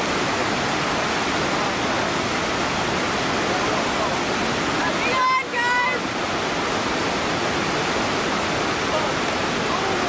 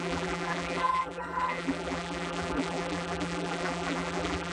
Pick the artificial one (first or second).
second